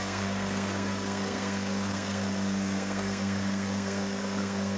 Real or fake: fake